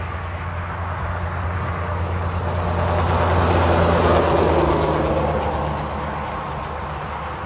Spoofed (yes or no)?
no